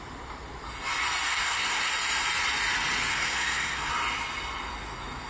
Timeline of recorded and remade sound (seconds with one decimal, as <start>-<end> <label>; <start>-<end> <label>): 0.0-1.3 recorded; 1.3-1.9 remade; 1.9-3.1 recorded; 3.1-3.9 remade; 3.9-5.3 recorded